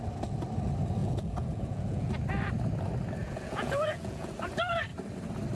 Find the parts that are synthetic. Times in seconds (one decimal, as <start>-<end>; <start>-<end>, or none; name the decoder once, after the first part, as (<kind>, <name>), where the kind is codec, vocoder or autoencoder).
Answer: 1.0-2.1 (vocoder, Vocos); 3.2-4.3